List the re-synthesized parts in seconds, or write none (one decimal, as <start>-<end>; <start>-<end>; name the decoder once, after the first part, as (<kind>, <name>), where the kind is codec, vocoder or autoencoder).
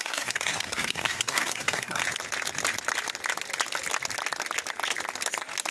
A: 0.0-2.0 (codec, SNAC)